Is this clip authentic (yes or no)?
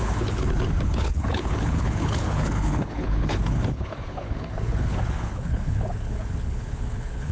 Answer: no